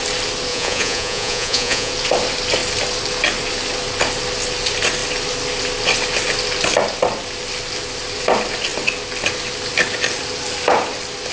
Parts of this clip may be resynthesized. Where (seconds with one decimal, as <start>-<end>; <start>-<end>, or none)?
0.5-1.9